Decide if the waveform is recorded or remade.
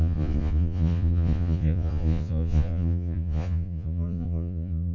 remade